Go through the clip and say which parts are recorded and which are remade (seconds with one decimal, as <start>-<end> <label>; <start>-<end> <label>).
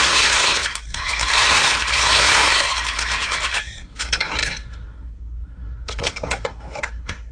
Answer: 0.0-7.3 remade